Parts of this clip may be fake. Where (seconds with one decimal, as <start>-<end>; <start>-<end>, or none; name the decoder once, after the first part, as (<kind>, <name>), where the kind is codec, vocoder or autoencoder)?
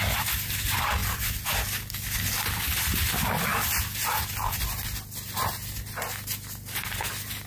none